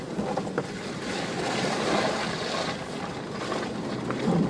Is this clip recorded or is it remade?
recorded